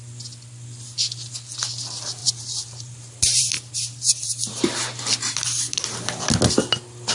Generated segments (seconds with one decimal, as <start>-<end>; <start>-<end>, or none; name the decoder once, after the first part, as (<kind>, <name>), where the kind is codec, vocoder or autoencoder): 2.2-6.2 (vocoder, BigVGAN v2)